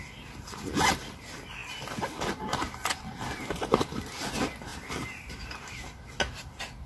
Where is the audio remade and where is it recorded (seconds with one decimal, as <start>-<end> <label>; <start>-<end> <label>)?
0.0-6.9 recorded